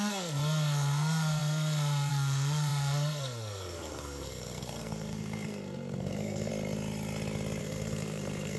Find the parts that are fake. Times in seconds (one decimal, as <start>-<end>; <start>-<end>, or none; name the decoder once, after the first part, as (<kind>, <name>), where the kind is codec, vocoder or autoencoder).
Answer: 0.0-6.5 (codec, SNAC); 7.6-8.6